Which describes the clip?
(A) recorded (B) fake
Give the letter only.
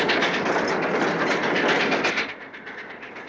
A